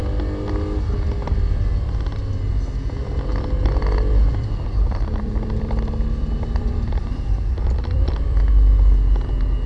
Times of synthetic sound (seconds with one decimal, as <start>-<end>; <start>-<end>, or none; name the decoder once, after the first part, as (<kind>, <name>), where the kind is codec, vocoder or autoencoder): 3.3-8.4 (vocoder, BigVGAN v2)